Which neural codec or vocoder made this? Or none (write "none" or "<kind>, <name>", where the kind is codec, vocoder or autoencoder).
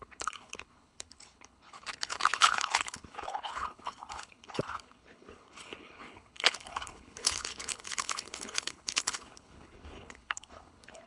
codec, HILCodec